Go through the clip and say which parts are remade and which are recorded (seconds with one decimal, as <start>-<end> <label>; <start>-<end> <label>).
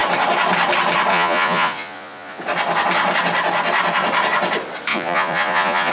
0.0-1.1 recorded; 1.1-2.4 remade; 2.4-4.9 recorded; 4.9-5.9 remade